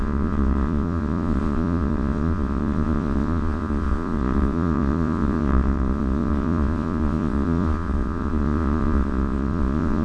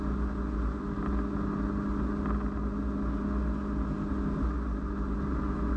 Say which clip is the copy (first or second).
first